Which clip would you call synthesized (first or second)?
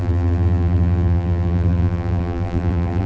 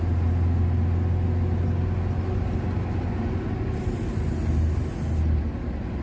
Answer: first